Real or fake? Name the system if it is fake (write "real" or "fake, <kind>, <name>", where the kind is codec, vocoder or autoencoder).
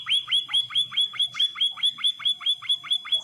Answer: fake, vocoder, BigVGAN v2